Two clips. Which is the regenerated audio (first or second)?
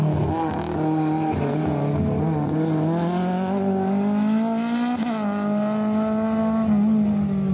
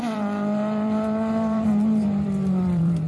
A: second